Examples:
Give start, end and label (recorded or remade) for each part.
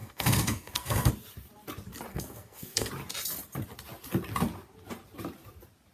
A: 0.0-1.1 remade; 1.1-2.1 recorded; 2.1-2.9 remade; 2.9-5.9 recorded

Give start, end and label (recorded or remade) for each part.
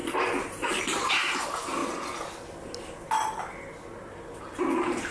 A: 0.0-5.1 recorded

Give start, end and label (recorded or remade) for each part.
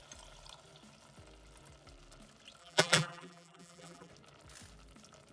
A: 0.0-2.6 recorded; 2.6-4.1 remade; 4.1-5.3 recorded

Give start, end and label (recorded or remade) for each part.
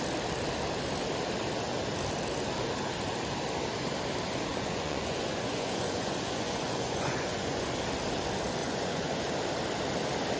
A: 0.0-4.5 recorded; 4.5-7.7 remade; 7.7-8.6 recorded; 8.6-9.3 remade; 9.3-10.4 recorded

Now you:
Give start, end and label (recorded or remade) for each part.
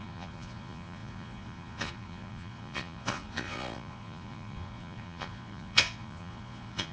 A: 0.0-6.9 remade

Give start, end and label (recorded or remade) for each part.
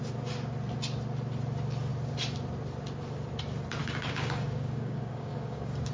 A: 0.0-3.8 recorded; 3.8-5.9 remade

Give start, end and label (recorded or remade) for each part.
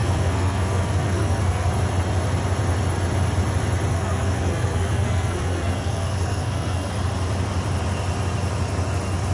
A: 0.0-1.7 remade; 1.7-3.9 recorded; 3.9-6.9 remade; 6.9-9.3 recorded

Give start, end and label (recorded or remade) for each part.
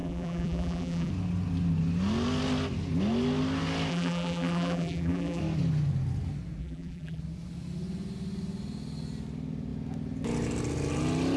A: 0.0-1.1 remade; 1.1-3.9 recorded; 3.9-5.4 remade; 5.4-6.6 recorded; 6.6-7.2 remade; 7.2-11.4 recorded